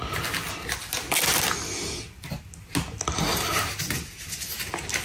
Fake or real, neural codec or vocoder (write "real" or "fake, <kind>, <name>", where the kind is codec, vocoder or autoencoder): real